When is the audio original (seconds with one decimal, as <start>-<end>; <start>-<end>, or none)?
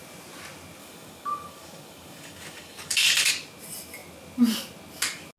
0.0-0.8; 3.3-5.4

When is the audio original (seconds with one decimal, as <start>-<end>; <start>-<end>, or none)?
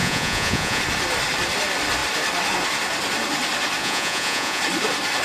0.8-3.8; 4.6-5.2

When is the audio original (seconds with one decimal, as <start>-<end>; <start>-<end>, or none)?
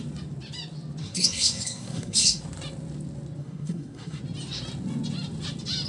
0.0-1.0; 2.4-3.4; 4.2-5.9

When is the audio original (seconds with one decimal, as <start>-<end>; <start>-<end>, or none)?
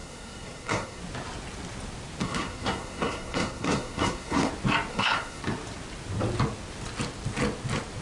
1.0-2.2; 4.5-4.9; 5.4-8.0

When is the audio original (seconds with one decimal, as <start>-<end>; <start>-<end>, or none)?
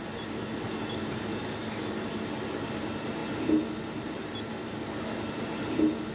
0.0-6.1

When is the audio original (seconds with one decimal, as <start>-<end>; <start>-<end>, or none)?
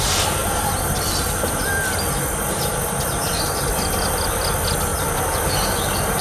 0.0-4.9